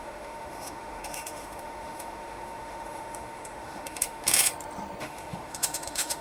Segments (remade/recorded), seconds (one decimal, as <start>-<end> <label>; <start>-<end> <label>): 0.0-4.5 remade; 4.5-5.0 recorded; 5.0-6.2 remade